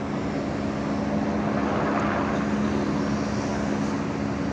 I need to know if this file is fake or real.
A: real